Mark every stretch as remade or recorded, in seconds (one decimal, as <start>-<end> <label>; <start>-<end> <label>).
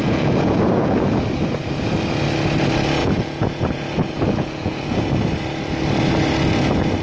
0.0-1.1 remade; 1.1-3.0 recorded; 3.0-5.0 remade; 5.0-7.0 recorded